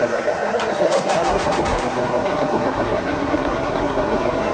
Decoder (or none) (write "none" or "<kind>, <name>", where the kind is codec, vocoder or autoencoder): codec, SNAC